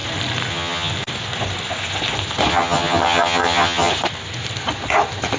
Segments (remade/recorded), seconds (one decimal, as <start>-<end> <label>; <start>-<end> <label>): 0.0-0.5 recorded; 0.5-0.9 remade; 0.9-2.5 recorded; 2.5-3.9 remade; 3.9-5.4 recorded